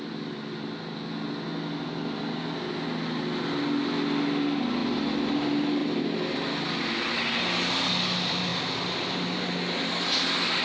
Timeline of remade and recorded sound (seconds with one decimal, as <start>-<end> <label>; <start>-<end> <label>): 0.0-10.6 recorded